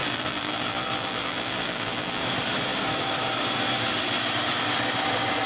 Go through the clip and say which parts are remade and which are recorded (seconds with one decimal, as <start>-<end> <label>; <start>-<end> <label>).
0.0-2.2 remade; 2.2-5.5 recorded